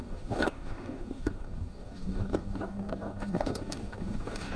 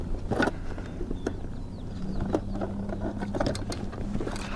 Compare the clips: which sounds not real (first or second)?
first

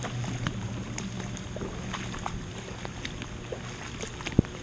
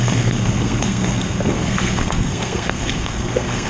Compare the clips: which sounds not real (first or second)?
second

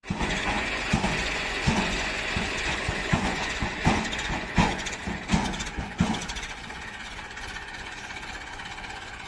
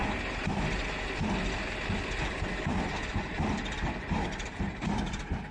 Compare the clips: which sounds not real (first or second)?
first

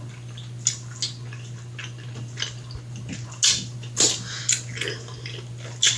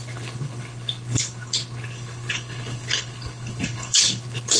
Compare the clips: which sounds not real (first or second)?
second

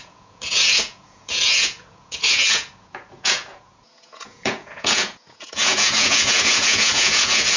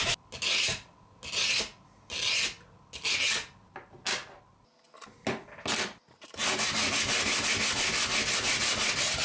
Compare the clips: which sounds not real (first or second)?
first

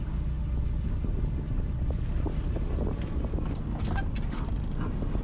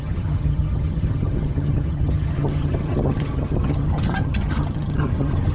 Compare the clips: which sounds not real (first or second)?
second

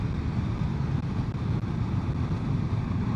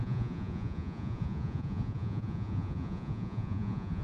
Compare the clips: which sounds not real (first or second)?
second